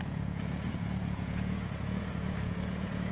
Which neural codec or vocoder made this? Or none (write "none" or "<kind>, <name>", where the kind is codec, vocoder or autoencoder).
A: vocoder, Vocos